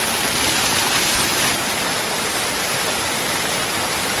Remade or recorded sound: remade